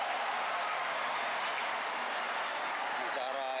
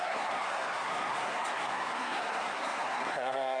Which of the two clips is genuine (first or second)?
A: first